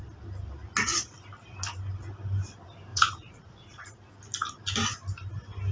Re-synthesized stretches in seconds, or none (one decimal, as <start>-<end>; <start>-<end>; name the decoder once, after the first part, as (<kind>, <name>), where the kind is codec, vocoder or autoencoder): 2.9-4.0 (vocoder, Vocos)